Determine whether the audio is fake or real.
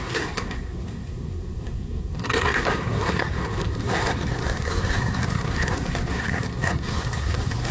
fake